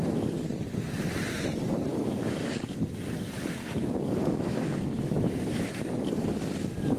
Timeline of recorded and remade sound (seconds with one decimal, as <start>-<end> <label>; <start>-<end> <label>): 0.0-1.9 recorded; 1.9-2.5 remade; 2.5-3.6 recorded; 3.6-5.8 remade; 5.8-7.0 recorded